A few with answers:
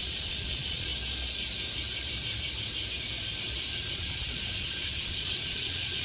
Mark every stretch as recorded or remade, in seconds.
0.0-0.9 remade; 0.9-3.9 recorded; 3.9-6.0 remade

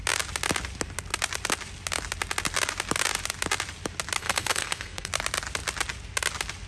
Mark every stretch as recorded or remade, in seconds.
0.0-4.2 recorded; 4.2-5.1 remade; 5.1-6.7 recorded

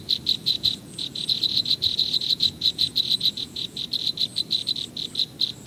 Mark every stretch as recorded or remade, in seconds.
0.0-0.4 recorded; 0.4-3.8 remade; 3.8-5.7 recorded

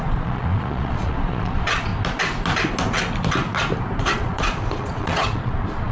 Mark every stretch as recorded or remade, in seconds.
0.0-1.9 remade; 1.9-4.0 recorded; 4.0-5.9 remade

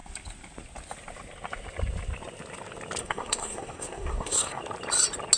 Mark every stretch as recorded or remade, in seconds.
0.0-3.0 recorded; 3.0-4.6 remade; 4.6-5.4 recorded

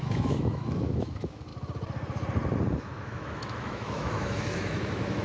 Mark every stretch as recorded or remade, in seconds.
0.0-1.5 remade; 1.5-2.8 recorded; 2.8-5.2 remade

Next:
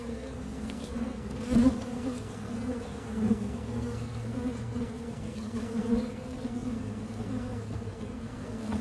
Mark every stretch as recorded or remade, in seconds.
0.0-8.8 remade